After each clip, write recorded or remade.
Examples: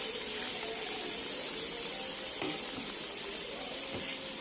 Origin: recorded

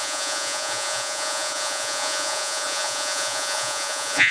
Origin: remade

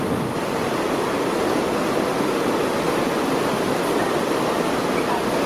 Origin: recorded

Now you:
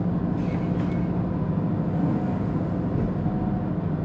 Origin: recorded